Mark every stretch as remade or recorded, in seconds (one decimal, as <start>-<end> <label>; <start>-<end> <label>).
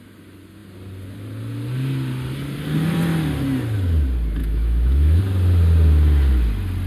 0.0-4.4 recorded; 4.4-5.2 remade; 5.2-6.9 recorded